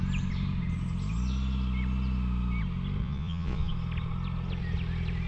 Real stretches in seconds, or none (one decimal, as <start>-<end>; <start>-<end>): 0.0-3.0; 3.7-5.3